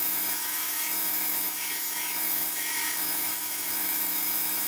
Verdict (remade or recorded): remade